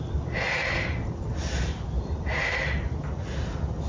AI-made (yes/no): no